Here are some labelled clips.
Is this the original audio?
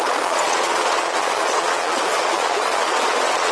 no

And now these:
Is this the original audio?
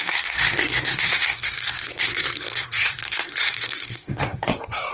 no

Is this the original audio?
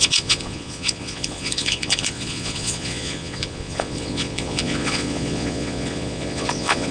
no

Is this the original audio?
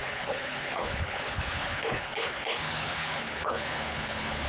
no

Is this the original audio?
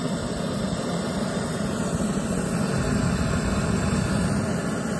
yes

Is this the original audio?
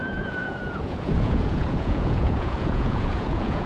no